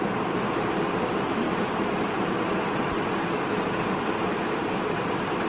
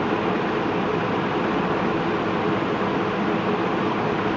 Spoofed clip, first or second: first